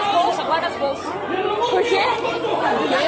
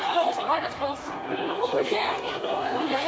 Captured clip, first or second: first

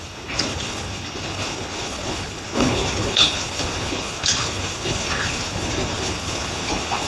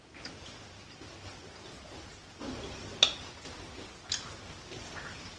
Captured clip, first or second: second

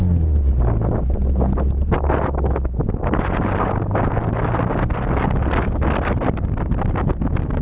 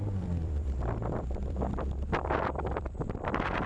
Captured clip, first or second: first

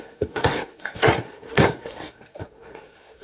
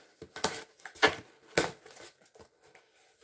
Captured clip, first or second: second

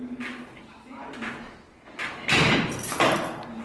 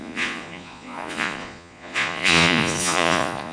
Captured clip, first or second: first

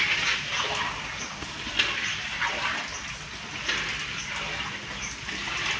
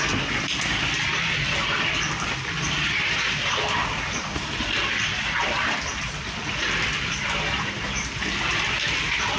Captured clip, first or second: first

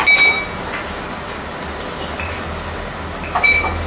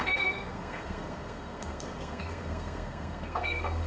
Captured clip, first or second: first